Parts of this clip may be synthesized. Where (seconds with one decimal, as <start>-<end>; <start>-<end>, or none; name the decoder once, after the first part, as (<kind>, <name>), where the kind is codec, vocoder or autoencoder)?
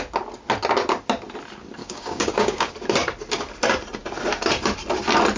1.8-2.7 (codec, DAC)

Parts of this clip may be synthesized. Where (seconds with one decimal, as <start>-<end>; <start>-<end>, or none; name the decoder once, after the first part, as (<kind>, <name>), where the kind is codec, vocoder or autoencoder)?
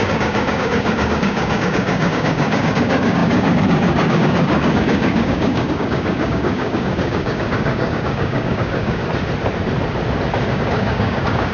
0.0-9.0 (codec, DAC); 10.5-11.5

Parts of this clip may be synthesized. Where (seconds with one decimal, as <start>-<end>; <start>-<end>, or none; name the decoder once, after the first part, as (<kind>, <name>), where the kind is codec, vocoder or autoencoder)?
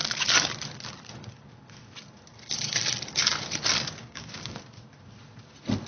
4.0-4.6 (codec, DAC)